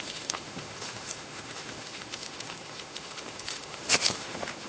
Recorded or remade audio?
remade